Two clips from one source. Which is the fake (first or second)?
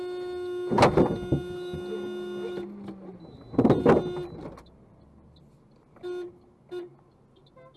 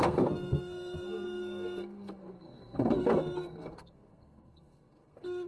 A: second